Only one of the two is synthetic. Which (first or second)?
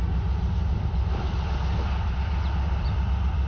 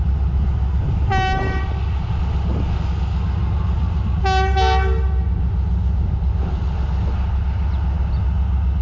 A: first